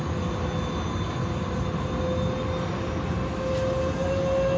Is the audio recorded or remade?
recorded